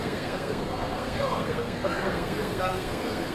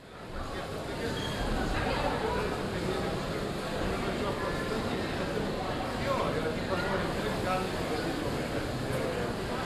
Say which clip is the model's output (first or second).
first